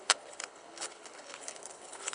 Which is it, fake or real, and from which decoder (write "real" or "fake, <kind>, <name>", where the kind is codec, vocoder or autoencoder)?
fake, codec, HILCodec